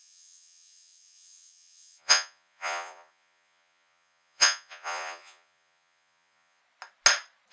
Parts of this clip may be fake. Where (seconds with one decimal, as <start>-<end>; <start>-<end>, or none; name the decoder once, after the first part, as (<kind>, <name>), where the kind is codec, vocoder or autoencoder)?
0.0-6.6 (vocoder, Vocos)

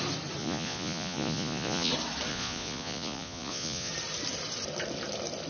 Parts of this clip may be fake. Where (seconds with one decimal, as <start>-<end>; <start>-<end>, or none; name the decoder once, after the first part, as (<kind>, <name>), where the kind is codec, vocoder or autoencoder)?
0.4-1.9 (vocoder, Vocos); 2.3-3.9

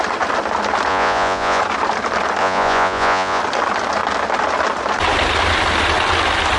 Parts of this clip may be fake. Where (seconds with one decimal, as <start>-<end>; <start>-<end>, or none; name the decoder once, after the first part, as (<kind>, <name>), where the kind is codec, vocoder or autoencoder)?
0.9-1.6 (vocoder, Vocos); 2.4-3.4

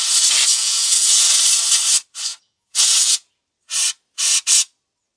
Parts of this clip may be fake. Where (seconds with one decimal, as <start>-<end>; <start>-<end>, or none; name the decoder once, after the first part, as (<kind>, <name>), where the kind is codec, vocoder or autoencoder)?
0.5-1.3 (vocoder, Vocos); 2.3-3.4

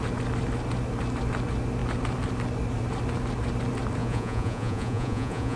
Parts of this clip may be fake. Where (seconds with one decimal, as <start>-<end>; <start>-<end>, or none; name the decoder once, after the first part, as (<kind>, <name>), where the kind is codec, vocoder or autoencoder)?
4.0-5.6 (vocoder, Vocos)

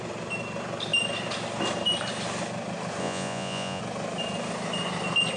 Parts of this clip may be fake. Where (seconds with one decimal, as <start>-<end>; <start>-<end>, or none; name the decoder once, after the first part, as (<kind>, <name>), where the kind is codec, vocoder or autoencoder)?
3.0-3.8 (vocoder, Vocos)

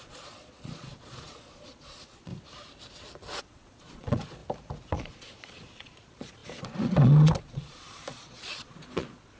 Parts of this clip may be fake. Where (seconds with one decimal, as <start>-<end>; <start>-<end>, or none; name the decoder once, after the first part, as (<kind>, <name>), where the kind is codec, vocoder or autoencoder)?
0.0-2.3 (vocoder, Vocos); 3.4-4.4; 4.9-9.4

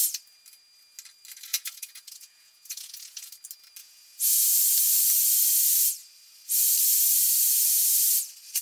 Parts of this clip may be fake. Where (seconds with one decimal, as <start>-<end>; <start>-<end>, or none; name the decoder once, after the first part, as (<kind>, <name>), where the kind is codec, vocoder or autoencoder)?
1.5-3.3 (vocoder, Vocos); 3.8-4.6